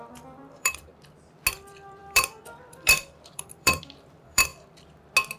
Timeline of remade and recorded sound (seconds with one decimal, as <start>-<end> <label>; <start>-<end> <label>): 0.0-0.9 remade; 0.9-1.5 recorded; 1.5-4.5 remade; 4.5-5.4 recorded